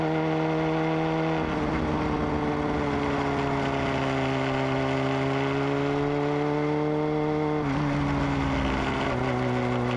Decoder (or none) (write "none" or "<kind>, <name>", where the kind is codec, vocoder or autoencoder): none